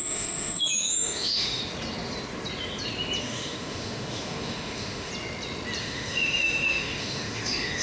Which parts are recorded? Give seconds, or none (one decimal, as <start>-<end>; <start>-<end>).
1.6-3.2; 5.1-5.8